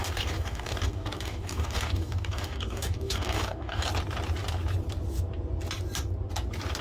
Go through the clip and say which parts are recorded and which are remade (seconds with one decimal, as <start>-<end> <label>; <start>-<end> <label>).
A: 0.0-3.9 remade; 3.9-6.8 recorded